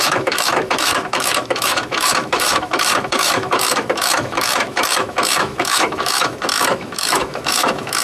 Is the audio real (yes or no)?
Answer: no